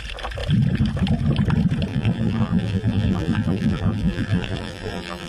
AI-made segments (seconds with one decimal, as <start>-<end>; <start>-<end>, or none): 1.9-5.3